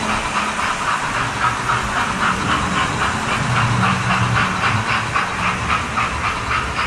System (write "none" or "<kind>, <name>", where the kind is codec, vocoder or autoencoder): none